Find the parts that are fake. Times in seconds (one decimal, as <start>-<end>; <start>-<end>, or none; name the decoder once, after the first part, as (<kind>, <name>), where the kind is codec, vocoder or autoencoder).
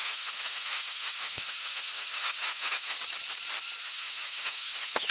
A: 0.0-2.9 (autoencoder, DAC-VAE); 3.8-5.1